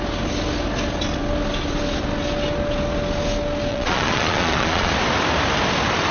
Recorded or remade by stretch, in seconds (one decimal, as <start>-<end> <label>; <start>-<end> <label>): 0.0-3.7 recorded; 3.7-4.9 remade; 4.9-6.1 recorded